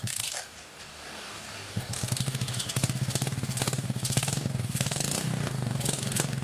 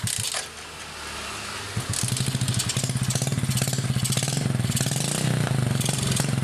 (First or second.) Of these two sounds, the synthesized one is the first